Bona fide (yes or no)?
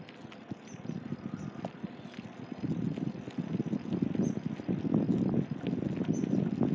yes